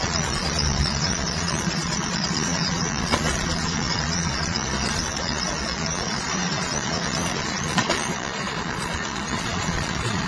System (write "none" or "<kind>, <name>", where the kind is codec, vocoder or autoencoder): vocoder, Vocos